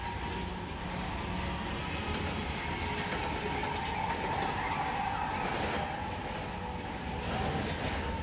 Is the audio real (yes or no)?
yes